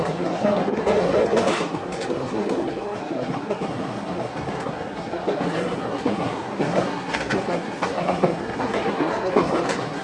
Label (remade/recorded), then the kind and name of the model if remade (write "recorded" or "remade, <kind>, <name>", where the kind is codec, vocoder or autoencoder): remade, codec, SNAC